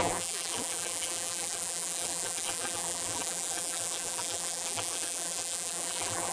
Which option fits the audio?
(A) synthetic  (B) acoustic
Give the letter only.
A